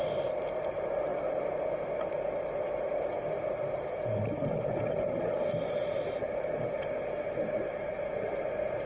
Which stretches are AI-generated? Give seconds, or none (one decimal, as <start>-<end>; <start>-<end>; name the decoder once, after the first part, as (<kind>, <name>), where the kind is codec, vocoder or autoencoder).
none